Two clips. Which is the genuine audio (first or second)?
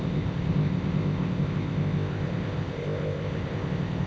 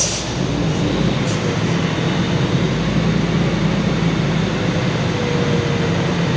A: second